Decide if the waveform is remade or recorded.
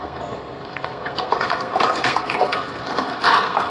remade